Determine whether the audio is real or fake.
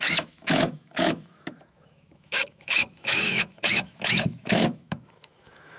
fake